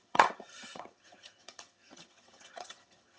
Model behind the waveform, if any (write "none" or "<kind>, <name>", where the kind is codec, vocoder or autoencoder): vocoder, HiFi-GAN